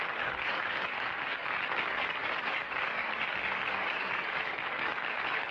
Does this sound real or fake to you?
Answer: fake